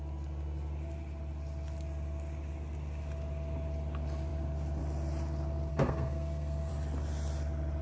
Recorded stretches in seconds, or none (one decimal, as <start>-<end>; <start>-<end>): 0.0-5.7; 6.7-7.8